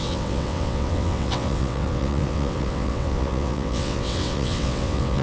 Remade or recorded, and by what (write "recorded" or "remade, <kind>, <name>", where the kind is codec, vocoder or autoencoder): remade, vocoder, WaveNeXt